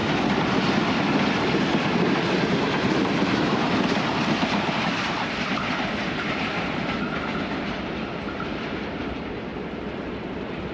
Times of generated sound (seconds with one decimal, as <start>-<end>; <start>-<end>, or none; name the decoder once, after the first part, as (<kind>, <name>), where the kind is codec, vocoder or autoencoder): 1.3-10.7 (vocoder, BigVGAN v2)